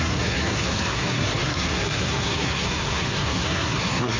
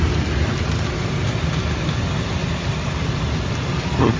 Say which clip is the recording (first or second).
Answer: second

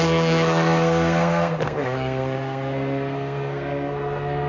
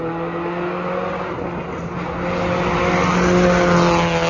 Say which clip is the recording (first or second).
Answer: second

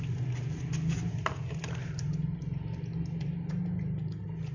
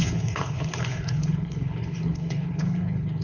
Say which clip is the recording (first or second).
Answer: first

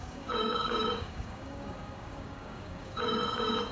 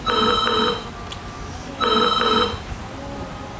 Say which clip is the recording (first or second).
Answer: second